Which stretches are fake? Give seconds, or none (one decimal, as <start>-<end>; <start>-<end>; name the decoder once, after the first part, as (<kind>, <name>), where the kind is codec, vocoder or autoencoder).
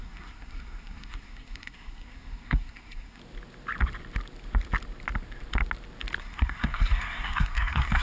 0.0-3.2 (codec, SNAC); 6.2-8.0